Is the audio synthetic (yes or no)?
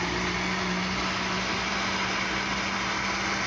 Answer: no